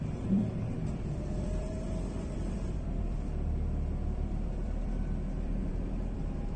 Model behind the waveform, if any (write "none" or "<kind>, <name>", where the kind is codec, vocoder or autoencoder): vocoder, BigVGAN v2